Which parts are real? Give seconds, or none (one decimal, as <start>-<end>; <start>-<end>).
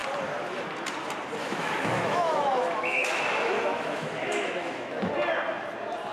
0.0-1.4; 5.1-6.1